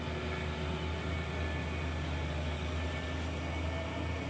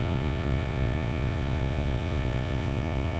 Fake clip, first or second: second